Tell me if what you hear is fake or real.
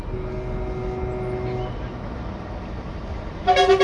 real